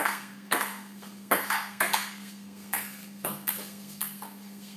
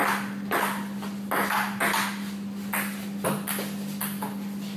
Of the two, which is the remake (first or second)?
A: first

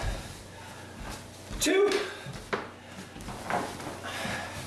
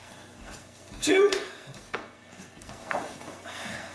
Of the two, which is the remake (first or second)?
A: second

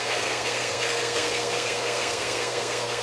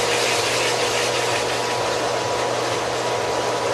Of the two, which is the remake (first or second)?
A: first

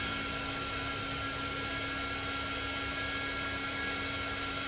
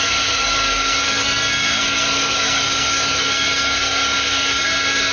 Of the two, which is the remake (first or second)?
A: second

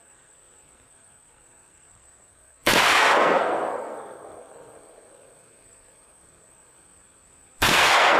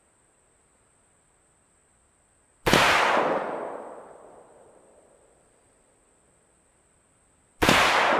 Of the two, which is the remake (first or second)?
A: first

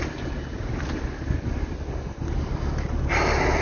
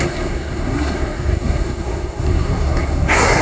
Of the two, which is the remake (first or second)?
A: second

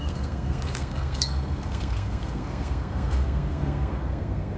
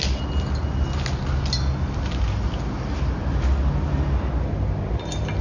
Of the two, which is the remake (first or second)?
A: first